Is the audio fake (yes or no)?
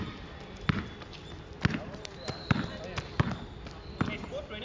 no